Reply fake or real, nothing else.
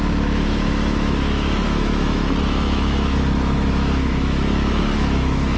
fake